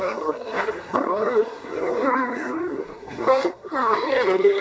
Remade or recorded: remade